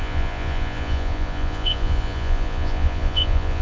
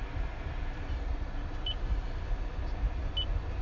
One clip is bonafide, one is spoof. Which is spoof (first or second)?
first